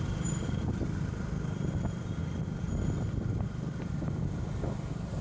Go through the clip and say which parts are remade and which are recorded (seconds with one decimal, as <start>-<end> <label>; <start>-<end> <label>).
0.0-2.2 recorded; 2.2-3.8 remade; 3.8-5.2 recorded